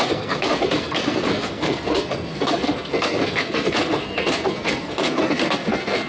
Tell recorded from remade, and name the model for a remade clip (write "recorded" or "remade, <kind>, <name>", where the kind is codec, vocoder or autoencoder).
remade, codec, SNAC